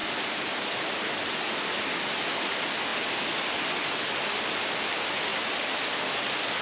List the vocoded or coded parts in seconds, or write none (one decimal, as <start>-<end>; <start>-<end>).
none